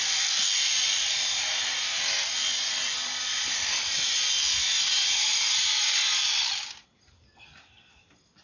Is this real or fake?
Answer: real